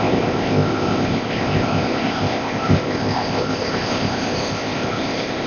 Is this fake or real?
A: fake